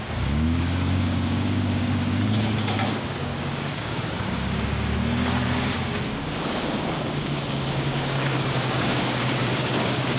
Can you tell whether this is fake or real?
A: fake